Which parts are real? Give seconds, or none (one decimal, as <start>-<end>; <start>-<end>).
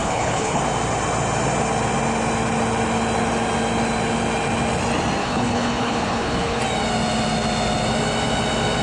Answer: 0.6-5.2; 6.6-8.8